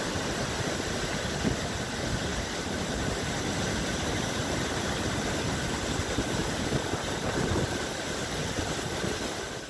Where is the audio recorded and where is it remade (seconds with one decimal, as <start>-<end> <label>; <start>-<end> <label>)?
0.0-2.3 recorded; 2.3-4.9 remade; 4.9-9.7 recorded